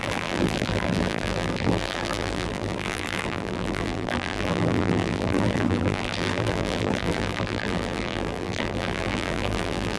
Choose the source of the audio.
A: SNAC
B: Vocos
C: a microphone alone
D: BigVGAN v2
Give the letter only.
D